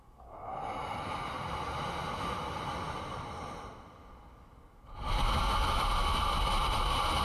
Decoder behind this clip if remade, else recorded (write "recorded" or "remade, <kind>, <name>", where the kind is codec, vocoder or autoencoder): recorded